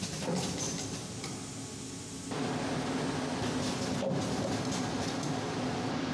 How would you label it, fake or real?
real